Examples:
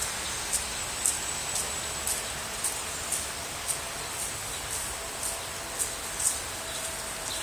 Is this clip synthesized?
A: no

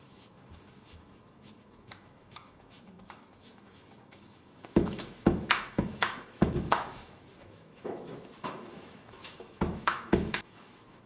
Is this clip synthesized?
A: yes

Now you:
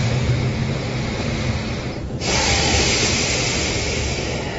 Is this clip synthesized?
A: no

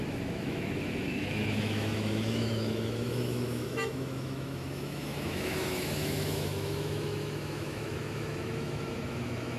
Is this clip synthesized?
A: yes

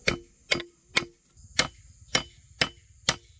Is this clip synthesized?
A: no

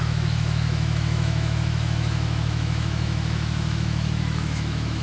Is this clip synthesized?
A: yes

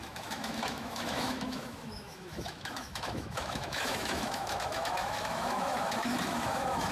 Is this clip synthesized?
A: yes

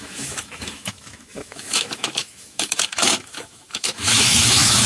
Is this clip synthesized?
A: yes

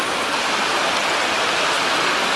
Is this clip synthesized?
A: no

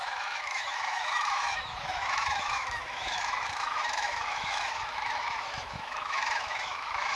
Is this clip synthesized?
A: yes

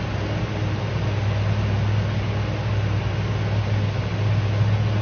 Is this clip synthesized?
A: no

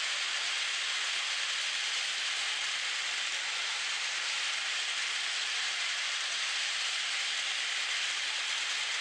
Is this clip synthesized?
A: no